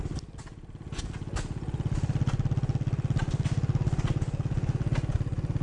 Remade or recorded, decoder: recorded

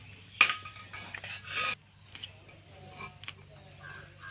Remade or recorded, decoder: recorded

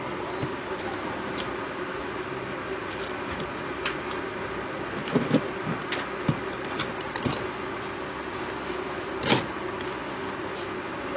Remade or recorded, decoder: recorded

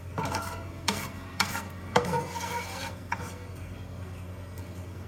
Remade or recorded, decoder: remade, codec, SNAC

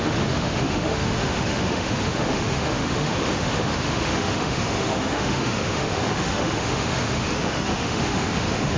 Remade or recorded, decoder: remade, autoencoder, DAC-VAE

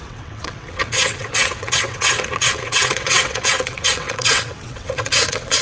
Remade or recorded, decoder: remade, vocoder, WaveNeXt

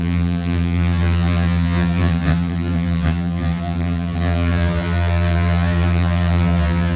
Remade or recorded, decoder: remade, vocoder, BigVGAN v2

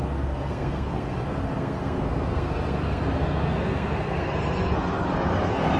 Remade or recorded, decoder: remade, codec, SNAC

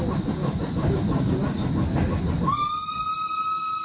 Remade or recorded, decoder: recorded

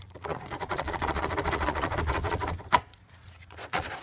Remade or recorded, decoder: remade, vocoder, Vocos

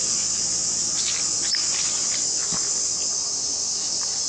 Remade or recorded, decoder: recorded